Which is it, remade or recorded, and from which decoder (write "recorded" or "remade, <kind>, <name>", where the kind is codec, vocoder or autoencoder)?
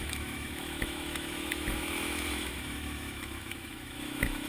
remade, autoencoder, DAC-VAE